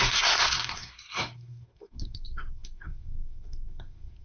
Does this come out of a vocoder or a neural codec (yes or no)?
yes